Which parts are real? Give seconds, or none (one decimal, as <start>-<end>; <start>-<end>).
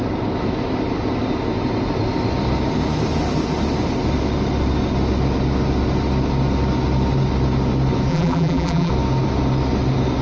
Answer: 0.0-8.1; 8.9-10.2